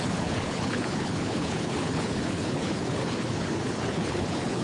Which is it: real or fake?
fake